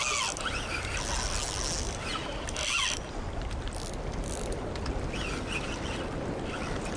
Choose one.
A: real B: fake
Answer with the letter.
A